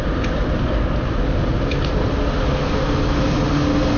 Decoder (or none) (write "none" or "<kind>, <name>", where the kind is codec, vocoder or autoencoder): none